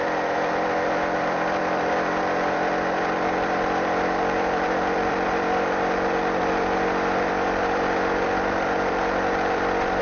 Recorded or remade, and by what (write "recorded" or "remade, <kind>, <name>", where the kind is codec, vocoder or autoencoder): remade, vocoder, BigVGAN v2